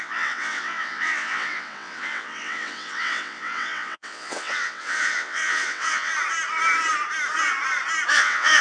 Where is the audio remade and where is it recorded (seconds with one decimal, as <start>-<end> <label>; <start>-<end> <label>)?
0.0-6.1 remade; 6.1-8.1 recorded; 8.1-8.6 remade